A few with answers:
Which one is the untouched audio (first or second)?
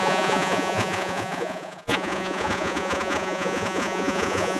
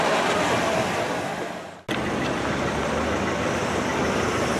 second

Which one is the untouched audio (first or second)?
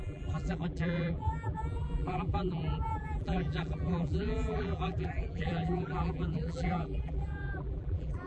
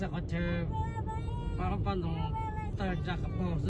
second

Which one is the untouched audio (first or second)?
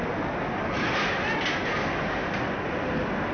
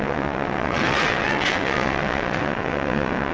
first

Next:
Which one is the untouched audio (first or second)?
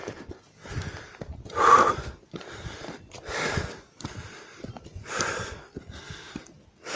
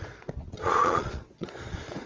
first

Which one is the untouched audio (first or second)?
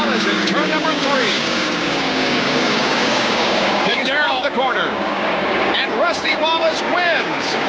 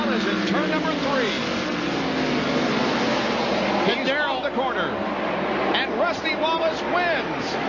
second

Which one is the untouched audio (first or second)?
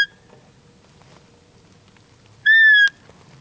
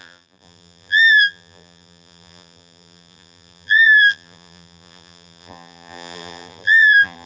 first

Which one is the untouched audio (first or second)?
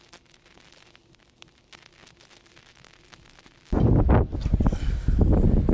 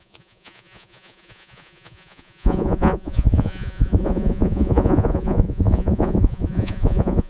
first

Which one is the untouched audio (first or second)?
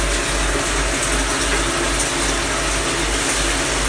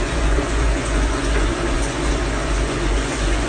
first